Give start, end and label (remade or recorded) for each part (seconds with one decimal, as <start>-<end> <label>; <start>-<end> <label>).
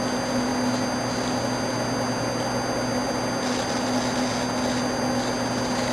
0.0-5.9 recorded